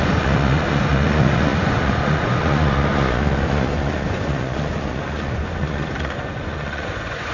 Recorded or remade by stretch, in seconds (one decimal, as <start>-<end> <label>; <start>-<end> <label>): 0.0-7.3 remade